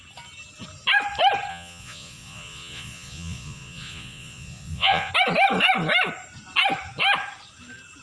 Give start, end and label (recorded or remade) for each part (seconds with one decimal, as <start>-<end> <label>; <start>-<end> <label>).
0.0-1.5 recorded; 1.5-5.1 remade; 5.1-8.0 recorded